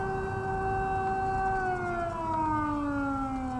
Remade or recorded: recorded